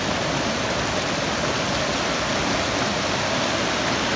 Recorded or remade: recorded